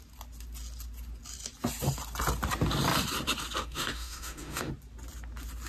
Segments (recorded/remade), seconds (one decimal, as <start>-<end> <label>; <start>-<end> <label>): 0.0-3.6 recorded; 3.6-4.7 remade; 4.7-5.7 recorded